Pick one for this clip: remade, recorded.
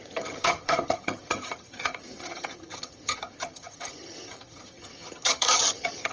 remade